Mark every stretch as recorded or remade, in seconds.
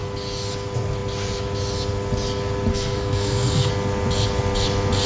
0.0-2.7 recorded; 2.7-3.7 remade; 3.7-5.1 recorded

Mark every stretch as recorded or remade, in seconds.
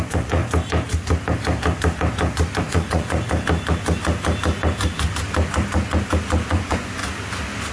0.0-0.4 remade; 0.4-2.6 recorded; 2.6-3.2 remade; 3.2-6.5 recorded; 6.5-7.0 remade; 7.0-7.7 recorded